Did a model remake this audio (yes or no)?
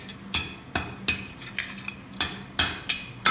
no